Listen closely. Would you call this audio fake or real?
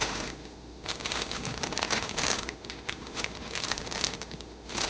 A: fake